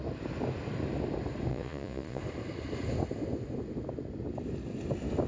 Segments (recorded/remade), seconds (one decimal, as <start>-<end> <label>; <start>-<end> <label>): 0.0-1.5 recorded; 1.5-2.2 remade; 2.2-5.3 recorded